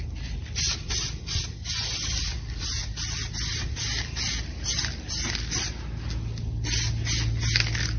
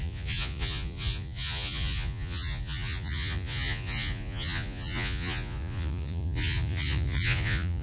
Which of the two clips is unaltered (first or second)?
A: first